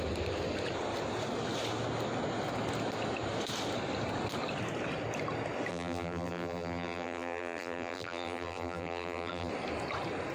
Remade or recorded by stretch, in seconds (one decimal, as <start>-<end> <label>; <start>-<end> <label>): 0.0-5.7 recorded; 5.7-9.5 remade; 9.5-10.3 recorded